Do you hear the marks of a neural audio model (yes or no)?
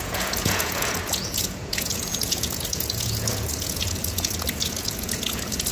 yes